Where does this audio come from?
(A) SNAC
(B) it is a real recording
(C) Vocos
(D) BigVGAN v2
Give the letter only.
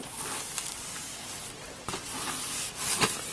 B